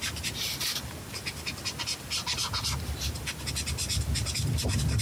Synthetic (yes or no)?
no